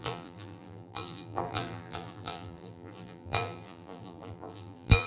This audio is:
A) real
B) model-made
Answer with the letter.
B